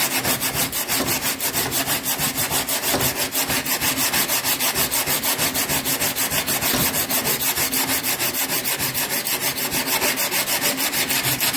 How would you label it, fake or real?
real